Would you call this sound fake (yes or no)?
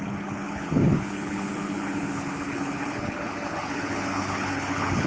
yes